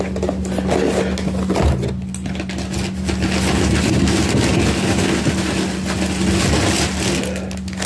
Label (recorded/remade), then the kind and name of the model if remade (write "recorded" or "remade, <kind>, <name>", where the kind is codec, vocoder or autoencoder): recorded